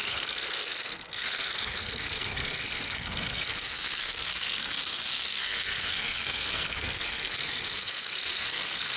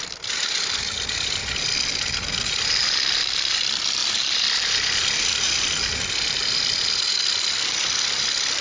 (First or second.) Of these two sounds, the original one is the second